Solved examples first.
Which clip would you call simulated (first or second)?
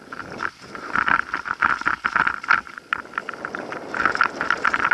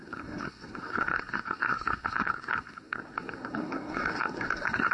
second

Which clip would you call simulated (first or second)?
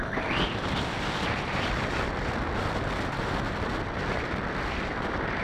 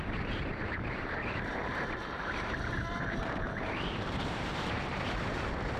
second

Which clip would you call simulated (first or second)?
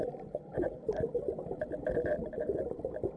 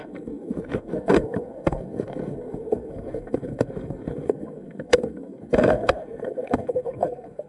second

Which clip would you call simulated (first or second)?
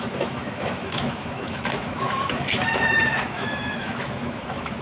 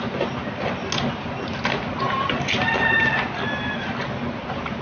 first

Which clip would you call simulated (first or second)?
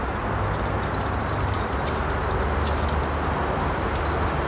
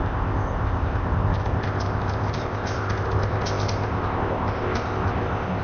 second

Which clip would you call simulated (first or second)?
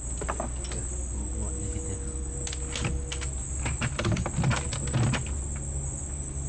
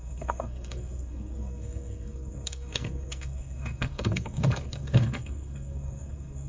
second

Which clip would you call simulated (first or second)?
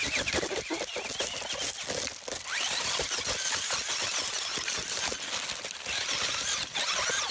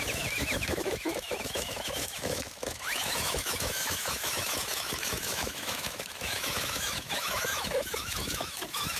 second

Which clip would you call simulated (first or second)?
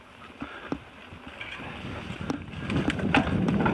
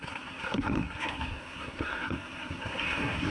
second